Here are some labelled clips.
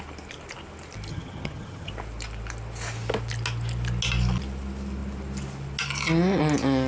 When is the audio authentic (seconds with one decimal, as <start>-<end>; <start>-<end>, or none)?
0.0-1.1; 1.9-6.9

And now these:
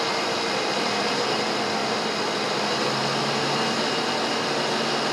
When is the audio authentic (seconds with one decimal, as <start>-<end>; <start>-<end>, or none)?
0.0-5.1

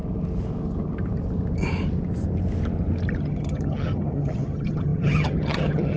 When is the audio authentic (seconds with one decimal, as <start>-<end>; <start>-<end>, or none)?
0.0-3.2

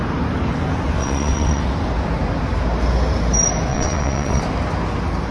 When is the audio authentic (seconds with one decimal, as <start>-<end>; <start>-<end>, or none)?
0.0-1.0; 1.6-3.7; 4.4-5.3

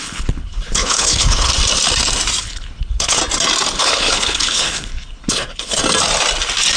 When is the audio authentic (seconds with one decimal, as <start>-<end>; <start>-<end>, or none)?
1.5-2.4; 3.2-3.8; 5.8-6.8

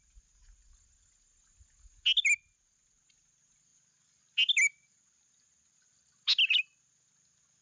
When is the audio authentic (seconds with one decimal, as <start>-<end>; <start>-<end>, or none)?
0.0-7.6

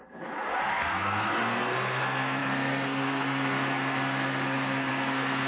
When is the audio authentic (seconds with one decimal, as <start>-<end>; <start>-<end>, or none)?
0.0-0.6